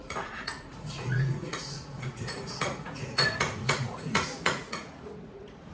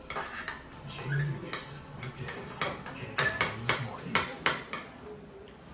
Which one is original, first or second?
second